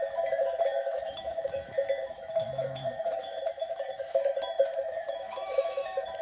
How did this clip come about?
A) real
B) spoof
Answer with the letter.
B